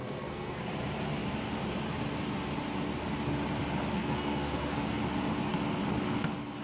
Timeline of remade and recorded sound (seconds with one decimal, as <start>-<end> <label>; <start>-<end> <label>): 0.0-0.6 remade; 0.6-4.0 recorded; 4.0-5.0 remade; 5.0-6.6 recorded